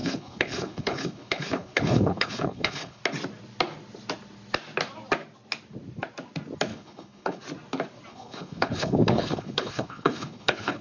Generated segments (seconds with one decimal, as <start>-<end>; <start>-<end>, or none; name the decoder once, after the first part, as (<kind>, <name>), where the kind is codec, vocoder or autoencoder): 0.0-3.0 (codec, HILCodec); 6.7-7.4; 8.1-10.8